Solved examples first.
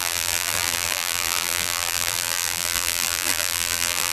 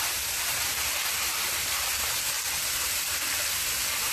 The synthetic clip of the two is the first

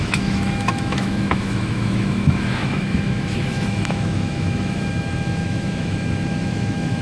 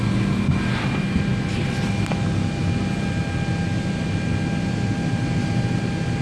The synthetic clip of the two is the first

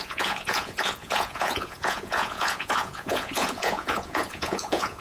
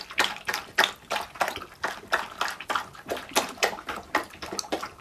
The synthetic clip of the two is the first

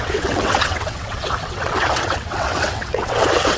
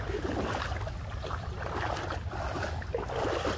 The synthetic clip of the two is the first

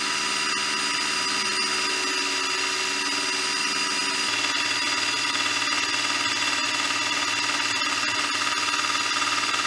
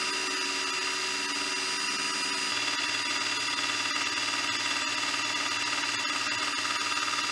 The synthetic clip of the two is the first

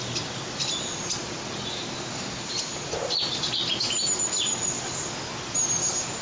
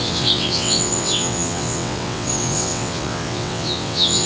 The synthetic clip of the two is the second